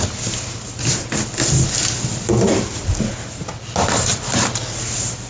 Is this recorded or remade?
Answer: recorded